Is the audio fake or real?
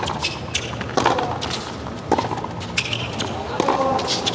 real